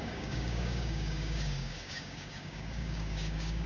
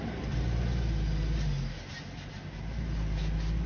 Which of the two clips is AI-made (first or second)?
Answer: first